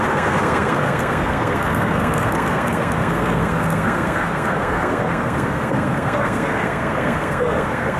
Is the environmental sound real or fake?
fake